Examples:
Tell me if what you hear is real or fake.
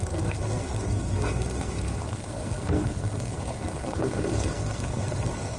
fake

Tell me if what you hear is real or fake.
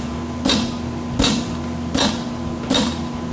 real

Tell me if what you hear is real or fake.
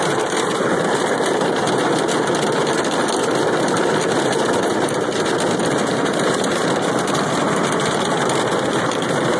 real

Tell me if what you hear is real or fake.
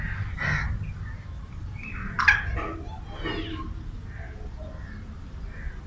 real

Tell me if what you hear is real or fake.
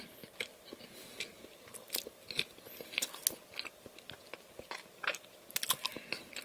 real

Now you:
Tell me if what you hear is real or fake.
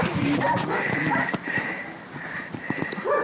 real